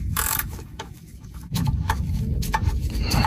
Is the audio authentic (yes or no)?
no